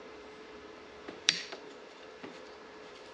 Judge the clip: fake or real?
fake